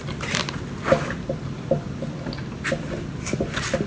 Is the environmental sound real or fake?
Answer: real